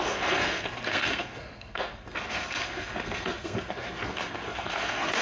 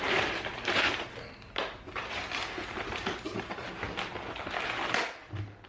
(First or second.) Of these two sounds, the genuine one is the second